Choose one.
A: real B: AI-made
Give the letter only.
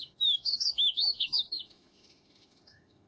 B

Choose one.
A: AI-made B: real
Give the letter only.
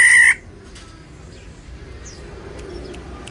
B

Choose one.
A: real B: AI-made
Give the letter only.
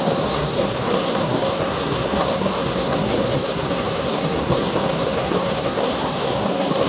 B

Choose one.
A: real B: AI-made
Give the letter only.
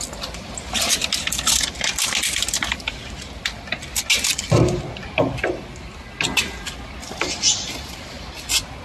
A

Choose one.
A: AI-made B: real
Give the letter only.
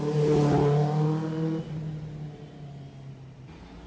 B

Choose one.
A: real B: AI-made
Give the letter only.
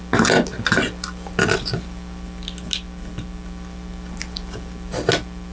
A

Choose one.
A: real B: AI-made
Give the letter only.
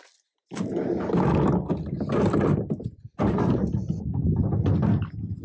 A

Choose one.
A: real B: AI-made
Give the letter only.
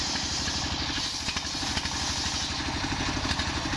A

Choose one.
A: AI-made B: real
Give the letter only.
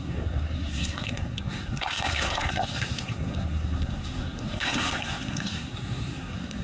A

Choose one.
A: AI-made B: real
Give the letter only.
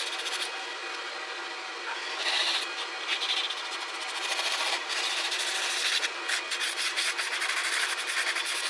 B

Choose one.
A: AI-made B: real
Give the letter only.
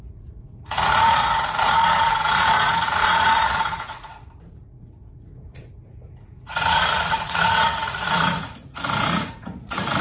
A